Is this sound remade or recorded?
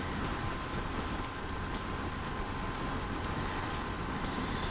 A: recorded